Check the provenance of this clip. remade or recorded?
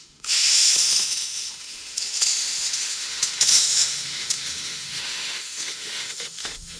remade